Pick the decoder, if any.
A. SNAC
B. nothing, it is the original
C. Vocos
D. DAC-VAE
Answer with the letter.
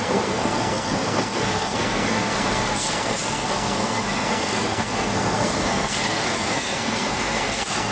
A